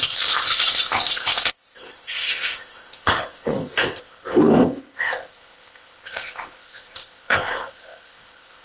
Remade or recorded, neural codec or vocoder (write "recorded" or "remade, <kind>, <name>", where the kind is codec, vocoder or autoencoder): remade, codec, ZipCodec